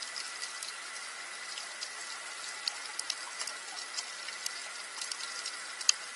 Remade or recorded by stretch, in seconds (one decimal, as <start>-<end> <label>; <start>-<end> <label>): 0.0-6.2 recorded

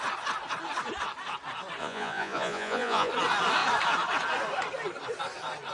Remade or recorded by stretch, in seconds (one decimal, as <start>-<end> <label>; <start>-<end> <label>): 0.0-1.8 recorded; 1.8-3.1 remade; 3.1-5.7 recorded